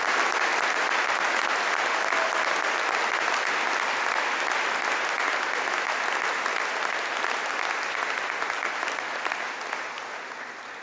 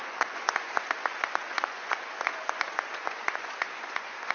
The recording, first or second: first